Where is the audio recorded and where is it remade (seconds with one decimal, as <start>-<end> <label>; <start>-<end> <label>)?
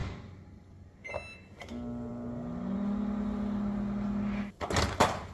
0.0-5.3 recorded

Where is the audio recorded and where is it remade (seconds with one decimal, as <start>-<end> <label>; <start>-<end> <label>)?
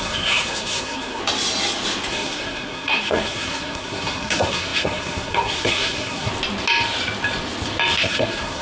0.0-1.2 remade; 1.2-2.1 recorded; 2.1-6.3 remade; 6.3-8.0 recorded; 8.0-8.6 remade